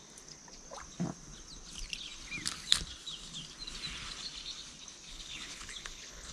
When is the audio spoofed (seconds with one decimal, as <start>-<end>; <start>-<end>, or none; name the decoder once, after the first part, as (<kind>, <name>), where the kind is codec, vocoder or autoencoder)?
5.1-6.3 (codec, HILCodec)